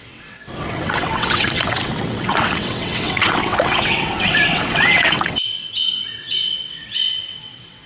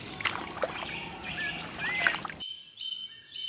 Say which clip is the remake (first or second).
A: first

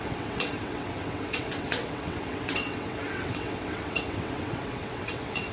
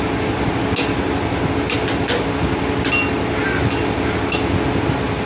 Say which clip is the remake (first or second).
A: first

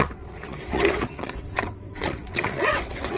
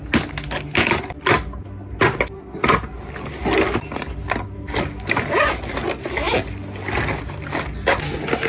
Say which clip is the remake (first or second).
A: first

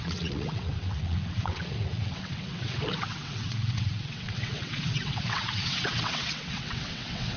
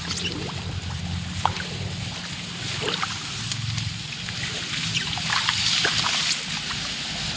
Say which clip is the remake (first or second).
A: first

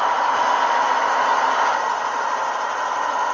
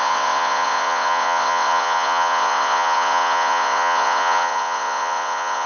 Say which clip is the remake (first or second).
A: second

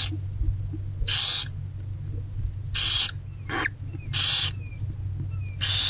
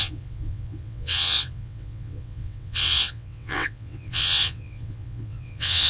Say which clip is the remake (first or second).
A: second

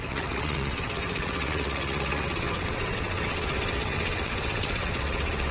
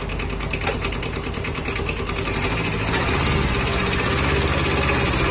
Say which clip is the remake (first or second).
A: first